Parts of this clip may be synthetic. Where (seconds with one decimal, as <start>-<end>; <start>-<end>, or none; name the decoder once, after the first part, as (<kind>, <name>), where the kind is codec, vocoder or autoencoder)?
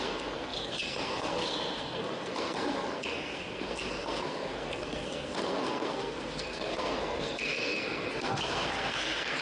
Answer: 0.0-9.4 (codec, SNAC)